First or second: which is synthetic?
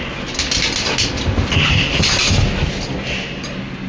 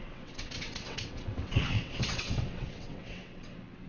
second